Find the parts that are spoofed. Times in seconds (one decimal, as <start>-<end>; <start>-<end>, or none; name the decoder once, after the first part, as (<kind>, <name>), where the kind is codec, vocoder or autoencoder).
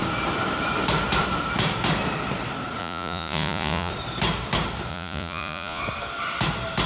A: 2.8-3.9 (vocoder, Vocos); 4.9-5.8